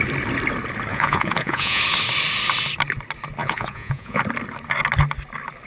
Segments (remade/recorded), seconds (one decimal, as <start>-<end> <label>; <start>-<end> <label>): 0.0-0.9 recorded; 0.9-1.8 remade; 1.8-3.4 recorded; 3.4-4.2 remade; 4.2-5.7 recorded